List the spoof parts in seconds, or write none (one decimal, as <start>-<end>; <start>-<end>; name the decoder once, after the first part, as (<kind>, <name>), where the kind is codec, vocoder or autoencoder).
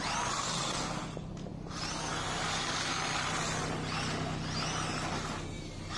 none